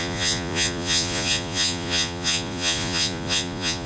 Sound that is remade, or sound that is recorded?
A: remade